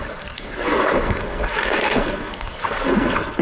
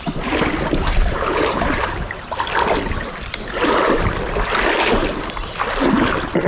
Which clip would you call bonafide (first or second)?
second